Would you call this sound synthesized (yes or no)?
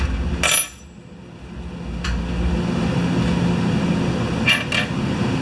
no